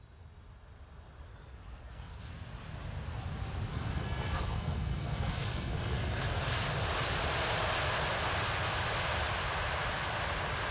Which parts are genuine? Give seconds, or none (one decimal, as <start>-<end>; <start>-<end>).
0.0-1.3; 2.2-3.7; 6.4-10.7